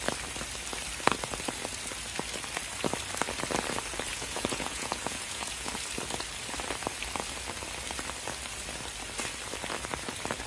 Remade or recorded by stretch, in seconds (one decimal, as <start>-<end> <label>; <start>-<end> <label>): 0.0-4.1 recorded; 4.1-5.7 remade; 5.7-10.5 recorded